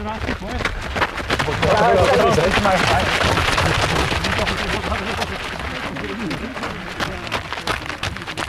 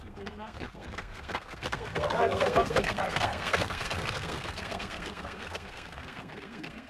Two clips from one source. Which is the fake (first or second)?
second